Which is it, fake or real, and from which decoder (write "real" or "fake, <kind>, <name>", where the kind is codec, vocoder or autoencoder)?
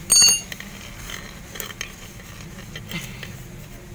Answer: real